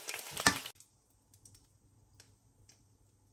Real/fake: real